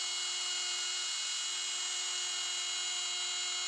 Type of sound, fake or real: real